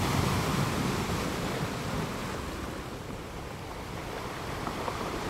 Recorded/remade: remade